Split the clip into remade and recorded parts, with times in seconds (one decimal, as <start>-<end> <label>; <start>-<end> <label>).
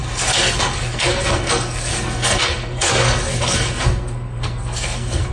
0.0-5.3 remade